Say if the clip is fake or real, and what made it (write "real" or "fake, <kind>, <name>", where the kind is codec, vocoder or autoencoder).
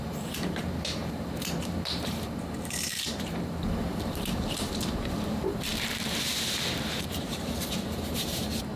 fake, vocoder, BigVGAN v2